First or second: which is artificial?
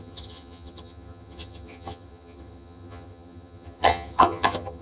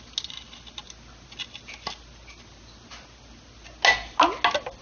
first